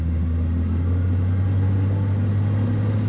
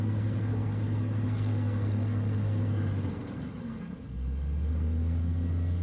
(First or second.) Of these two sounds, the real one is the first